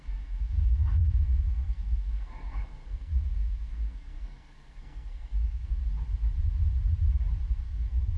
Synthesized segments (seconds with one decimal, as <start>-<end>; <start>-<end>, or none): 0.0-5.8; 7.5-8.2